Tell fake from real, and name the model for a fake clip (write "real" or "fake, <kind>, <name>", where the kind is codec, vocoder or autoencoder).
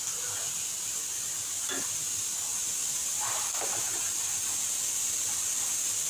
real